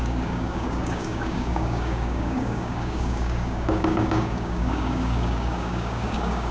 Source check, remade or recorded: remade